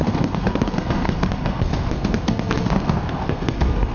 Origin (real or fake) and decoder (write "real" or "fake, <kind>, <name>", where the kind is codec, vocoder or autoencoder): fake, codec, SNAC